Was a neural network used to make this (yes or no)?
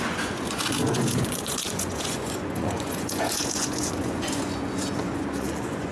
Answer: yes